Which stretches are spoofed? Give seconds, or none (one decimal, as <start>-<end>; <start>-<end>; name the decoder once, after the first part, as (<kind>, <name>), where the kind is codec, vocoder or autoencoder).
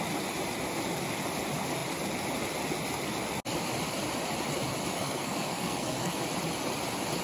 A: 4.9-6.2 (codec, SNAC)